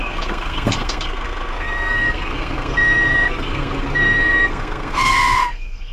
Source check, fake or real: fake